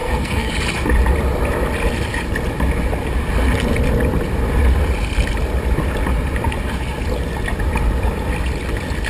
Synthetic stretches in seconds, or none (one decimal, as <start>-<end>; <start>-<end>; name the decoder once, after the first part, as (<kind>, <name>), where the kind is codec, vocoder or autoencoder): 0.0-0.5 (codec, SNAC)